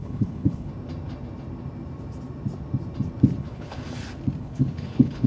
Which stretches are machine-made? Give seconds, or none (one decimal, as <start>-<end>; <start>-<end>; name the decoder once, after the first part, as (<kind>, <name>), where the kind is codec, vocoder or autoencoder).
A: 0.0-0.7 (codec, HILCodec); 3.4-3.8; 4.4-5.3